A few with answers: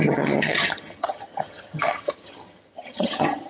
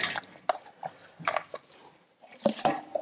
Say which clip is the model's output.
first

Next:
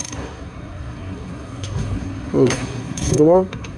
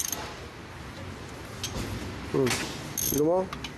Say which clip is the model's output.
first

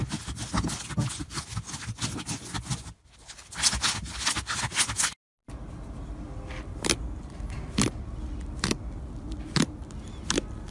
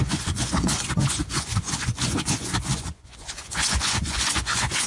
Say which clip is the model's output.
second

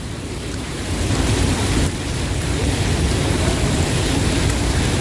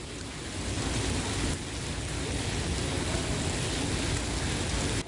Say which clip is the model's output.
first